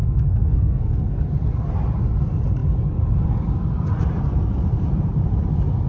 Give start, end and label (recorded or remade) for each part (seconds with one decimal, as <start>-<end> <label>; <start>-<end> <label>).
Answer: 0.0-1.2 remade; 1.2-5.9 recorded

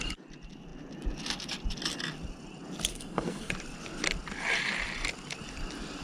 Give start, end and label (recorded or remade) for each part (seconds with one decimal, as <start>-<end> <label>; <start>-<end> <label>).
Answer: 0.0-2.9 recorded; 2.9-3.5 remade; 3.5-6.0 recorded